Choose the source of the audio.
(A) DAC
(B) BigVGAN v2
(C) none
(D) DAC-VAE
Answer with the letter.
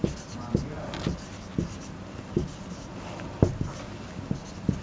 C